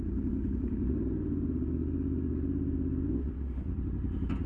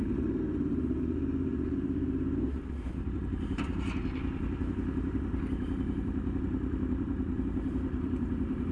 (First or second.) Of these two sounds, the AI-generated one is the second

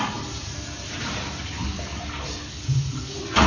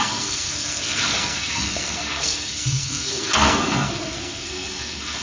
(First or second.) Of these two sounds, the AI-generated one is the second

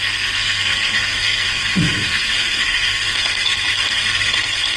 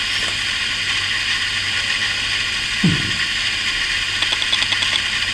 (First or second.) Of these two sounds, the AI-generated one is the first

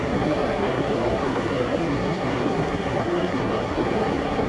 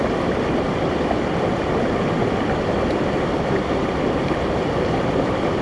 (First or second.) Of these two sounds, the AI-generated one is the first